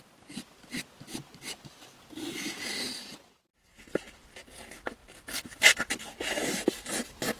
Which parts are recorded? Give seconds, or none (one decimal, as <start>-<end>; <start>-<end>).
0.0-7.4